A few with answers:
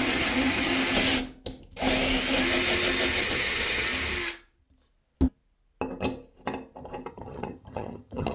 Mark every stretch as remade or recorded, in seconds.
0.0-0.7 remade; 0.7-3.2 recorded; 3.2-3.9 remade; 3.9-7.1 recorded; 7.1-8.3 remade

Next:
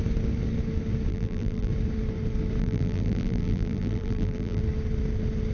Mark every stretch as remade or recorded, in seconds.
0.0-1.1 recorded; 1.1-1.7 remade; 1.7-2.6 recorded; 2.6-4.6 remade; 4.6-5.5 recorded

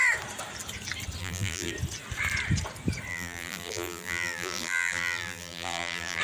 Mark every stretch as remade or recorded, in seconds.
0.0-1.2 recorded; 1.2-1.7 remade; 1.7-3.1 recorded; 3.1-6.2 remade